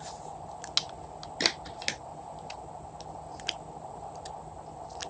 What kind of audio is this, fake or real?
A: real